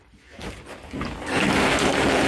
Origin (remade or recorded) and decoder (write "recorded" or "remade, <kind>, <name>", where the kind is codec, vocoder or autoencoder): recorded